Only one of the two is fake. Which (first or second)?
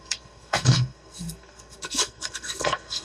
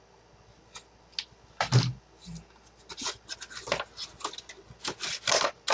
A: first